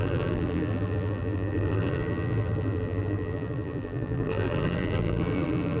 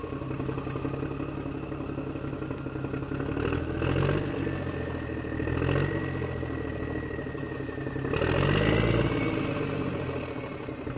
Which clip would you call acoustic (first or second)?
second